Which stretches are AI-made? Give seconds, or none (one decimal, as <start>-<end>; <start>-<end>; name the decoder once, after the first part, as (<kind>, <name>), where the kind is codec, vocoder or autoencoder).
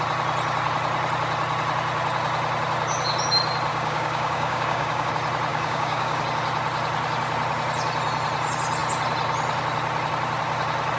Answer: 3.7-5.1 (codec, DAC); 5.5-6.2